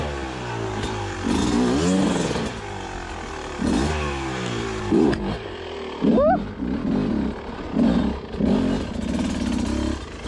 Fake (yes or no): no